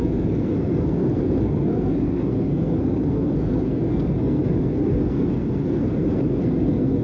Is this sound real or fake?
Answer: fake